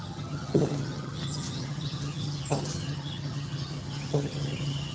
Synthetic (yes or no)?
yes